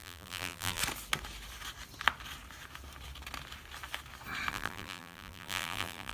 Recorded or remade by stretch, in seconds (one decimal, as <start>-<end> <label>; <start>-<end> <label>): 0.0-0.8 remade; 0.8-4.5 recorded; 4.5-6.1 remade